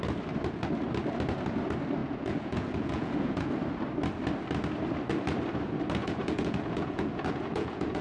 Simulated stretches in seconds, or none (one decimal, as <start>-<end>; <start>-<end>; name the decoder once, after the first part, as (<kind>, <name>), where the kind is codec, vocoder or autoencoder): 2.0-3.5 (vocoder, Vocos); 6.0-8.0